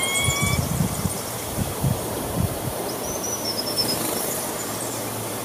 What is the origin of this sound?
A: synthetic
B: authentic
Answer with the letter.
A